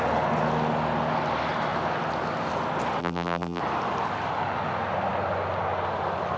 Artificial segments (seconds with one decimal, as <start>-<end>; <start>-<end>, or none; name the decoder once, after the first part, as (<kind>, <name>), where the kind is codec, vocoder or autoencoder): 3.0-3.6 (vocoder, BigVGAN v2)